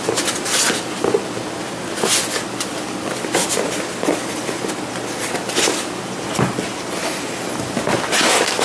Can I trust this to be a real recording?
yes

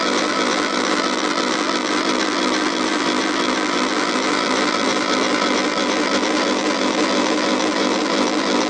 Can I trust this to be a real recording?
no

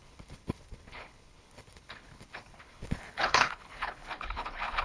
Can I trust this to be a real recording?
no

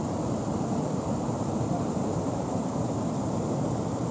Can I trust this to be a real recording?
no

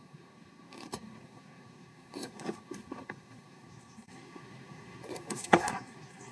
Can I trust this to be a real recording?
no